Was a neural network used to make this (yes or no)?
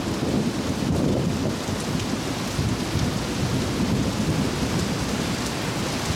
no